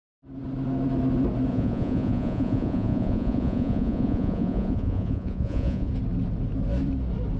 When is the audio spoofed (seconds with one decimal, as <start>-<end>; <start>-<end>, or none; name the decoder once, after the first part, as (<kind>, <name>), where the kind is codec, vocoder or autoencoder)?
1.5-5.9 (vocoder, Vocos)